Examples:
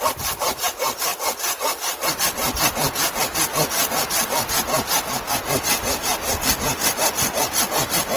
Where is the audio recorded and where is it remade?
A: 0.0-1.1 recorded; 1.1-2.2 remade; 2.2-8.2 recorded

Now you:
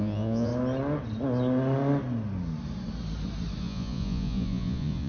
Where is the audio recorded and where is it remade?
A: 0.0-0.5 remade; 0.5-3.6 recorded; 3.6-5.1 remade

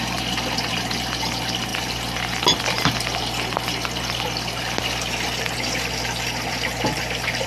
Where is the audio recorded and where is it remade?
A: 0.0-1.7 remade; 1.7-5.4 recorded; 5.4-7.5 remade

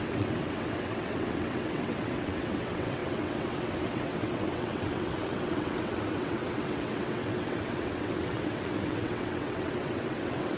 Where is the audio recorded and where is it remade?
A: 0.0-10.6 remade

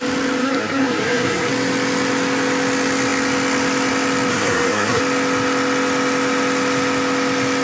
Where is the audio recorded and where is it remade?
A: 0.0-0.4 recorded; 0.4-1.5 remade; 1.5-4.3 recorded; 4.3-5.0 remade; 5.0-7.6 recorded

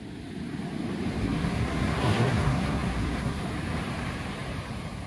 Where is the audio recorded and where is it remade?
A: 0.0-1.2 recorded; 1.2-3.4 remade; 3.4-5.1 recorded